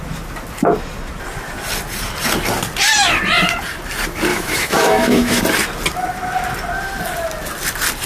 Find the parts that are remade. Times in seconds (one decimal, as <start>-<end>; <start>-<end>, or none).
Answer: 4.3-5.4